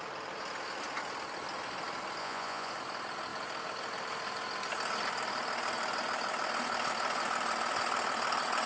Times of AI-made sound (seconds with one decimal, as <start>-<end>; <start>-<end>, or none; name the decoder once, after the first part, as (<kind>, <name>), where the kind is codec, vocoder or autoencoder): 2.2-2.7 (vocoder, Vocos)